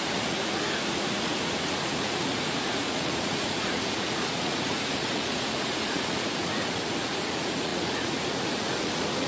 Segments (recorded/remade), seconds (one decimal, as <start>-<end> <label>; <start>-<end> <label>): 0.0-9.3 remade